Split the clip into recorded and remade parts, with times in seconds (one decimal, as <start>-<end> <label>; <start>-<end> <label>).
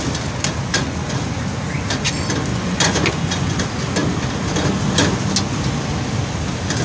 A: 0.0-0.8 recorded; 0.8-1.4 remade; 1.4-2.5 recorded; 2.5-3.6 remade; 3.6-6.8 recorded